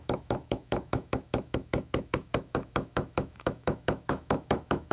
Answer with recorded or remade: remade